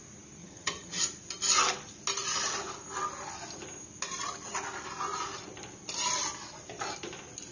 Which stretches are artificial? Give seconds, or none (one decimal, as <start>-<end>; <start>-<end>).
0.4-1.0